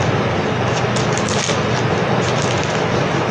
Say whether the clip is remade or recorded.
recorded